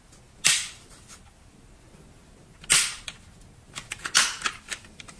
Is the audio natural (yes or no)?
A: yes